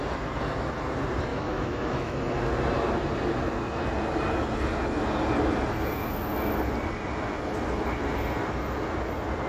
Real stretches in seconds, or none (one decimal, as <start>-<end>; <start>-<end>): 0.0-1.3; 2.2-9.5